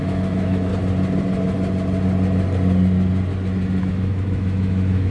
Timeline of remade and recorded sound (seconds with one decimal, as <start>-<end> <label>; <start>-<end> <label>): 0.0-0.7 remade; 0.7-3.8 recorded; 3.8-5.1 remade

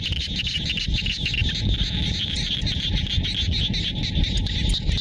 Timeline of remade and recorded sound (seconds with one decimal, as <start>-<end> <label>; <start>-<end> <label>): 0.0-5.0 recorded

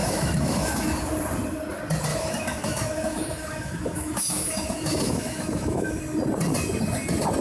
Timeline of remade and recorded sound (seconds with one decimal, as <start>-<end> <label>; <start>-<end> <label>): 0.0-1.0 remade; 1.0-2.1 recorded; 2.1-6.0 remade; 6.0-7.4 recorded

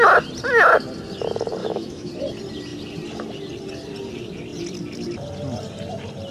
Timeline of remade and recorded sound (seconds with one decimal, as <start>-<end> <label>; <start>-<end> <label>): 0.0-1.6 recorded; 1.6-2.1 remade; 2.1-6.3 recorded

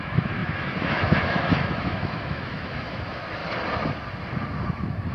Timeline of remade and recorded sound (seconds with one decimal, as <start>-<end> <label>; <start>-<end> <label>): 0.0-3.4 remade; 3.4-5.1 recorded

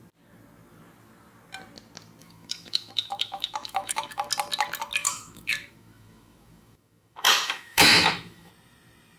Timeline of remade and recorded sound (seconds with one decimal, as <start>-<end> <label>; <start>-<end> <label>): 0.0-2.2 recorded; 2.2-4.3 remade; 4.3-5.0 recorded; 5.0-8.5 remade; 8.5-9.2 recorded

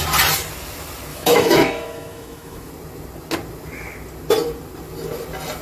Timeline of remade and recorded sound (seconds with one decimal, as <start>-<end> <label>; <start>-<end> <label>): 0.0-1.1 recorded; 1.1-2.7 remade; 2.7-5.6 recorded